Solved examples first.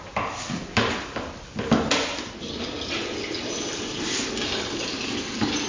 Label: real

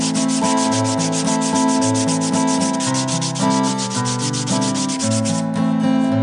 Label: real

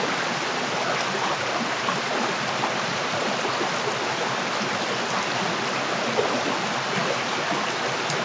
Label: real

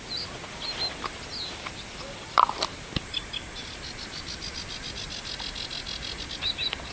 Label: real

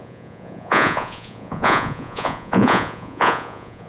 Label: fake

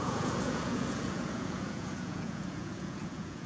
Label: fake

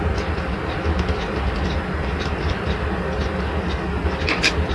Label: real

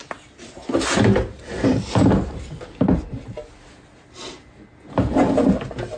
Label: real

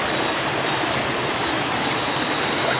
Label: real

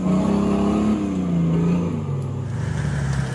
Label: real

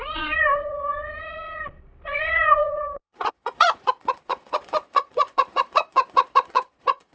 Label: fake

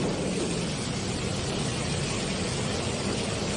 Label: real